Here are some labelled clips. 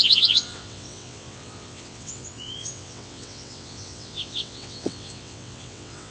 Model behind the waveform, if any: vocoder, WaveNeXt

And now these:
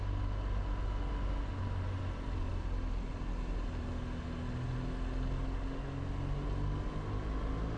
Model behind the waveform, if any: none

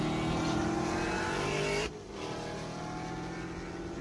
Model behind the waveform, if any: none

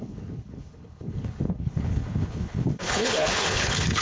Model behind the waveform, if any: codec, HILCodec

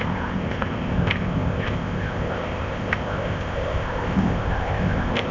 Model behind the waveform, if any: codec, ZipCodec